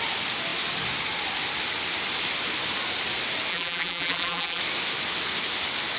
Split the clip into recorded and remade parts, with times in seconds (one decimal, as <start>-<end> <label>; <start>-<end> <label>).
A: 0.0-3.5 recorded; 3.5-4.6 remade; 4.6-6.0 recorded